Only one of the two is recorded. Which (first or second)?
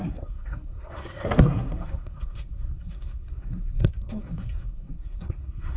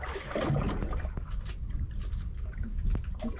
second